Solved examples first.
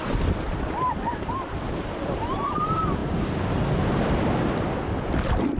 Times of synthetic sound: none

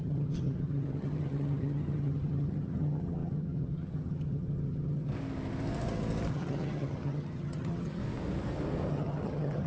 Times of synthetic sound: 0.0-5.1 (vocoder, HiFi-GAN); 6.3-8.0; 8.9-9.7

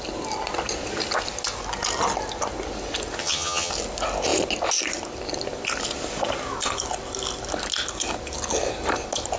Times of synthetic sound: 3.2-3.7 (vocoder, HiFi-GAN)

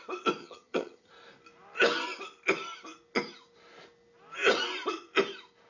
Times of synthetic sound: 0.4-1.1 (vocoder, HiFi-GAN)

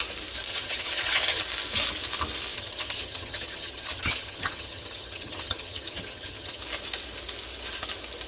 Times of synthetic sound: 0.5-1.4 (vocoder, HiFi-GAN); 2.5-6.6

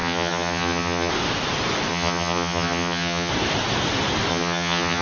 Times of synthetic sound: 0.0-1.1 (vocoder, HiFi-GAN); 1.9-3.3; 4.3-5.0

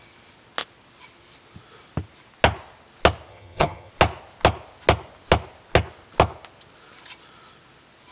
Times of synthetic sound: 3.3-3.9 (vocoder, HiFi-GAN)

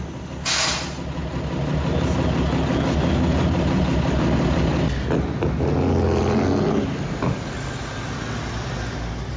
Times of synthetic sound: none